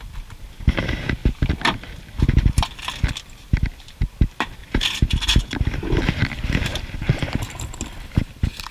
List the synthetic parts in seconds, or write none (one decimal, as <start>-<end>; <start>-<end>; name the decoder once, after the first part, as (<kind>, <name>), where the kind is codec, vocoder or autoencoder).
1.2-3.1 (vocoder, BigVGAN v2); 4.6-7.6